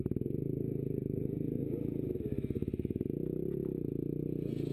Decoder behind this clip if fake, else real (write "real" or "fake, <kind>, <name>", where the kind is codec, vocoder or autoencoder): real